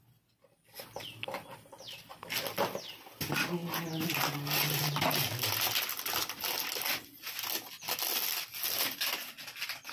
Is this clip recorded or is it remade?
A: recorded